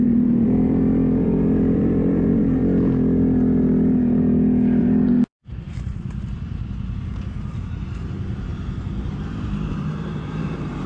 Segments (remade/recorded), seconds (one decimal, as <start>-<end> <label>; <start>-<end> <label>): 0.0-2.6 remade; 2.6-4.8 recorded; 4.8-10.9 remade